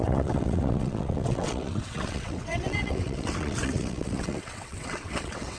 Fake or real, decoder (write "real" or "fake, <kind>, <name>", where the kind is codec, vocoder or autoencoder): fake, vocoder, WaveNeXt